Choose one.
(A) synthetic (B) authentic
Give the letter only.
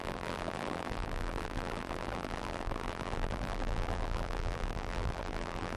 A